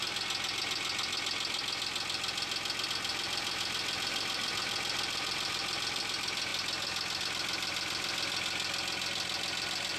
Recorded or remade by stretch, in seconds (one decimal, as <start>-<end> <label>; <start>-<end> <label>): 0.0-3.1 recorded; 3.1-6.0 remade; 6.0-10.0 recorded